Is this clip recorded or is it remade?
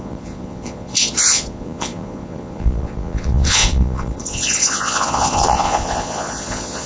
remade